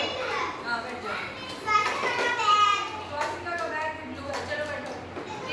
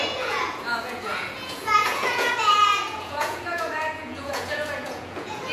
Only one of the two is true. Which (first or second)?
first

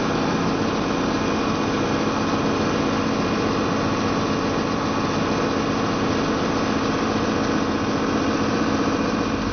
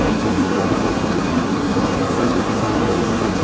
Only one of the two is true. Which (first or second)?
first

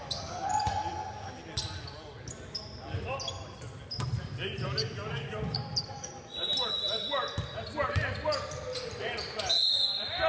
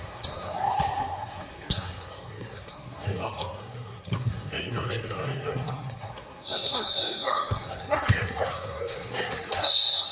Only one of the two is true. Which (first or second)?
first